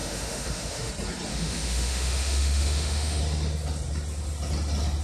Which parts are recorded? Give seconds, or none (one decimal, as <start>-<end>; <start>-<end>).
0.9-1.3; 3.2-5.0